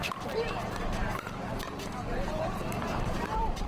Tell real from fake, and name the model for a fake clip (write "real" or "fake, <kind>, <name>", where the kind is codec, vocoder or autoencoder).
fake, vocoder, BigVGAN v2